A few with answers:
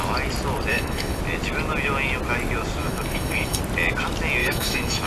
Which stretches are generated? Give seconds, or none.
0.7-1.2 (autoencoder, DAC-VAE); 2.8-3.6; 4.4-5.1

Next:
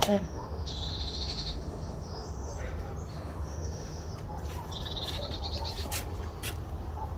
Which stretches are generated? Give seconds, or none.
0.0-2.5 (autoencoder, DAC-VAE); 3.1-4.1

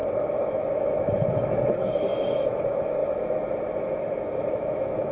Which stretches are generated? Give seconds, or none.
0.0-5.1 (autoencoder, DAC-VAE)

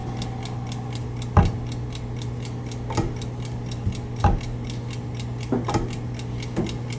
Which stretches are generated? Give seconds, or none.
none

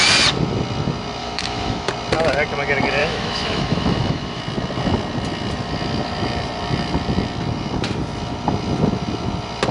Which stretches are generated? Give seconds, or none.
1.2-1.9 (autoencoder, DAC-VAE); 3.0-4.4